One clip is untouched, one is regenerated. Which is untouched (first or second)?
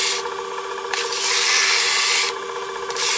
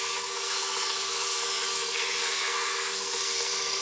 first